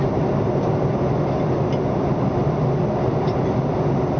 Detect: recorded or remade recorded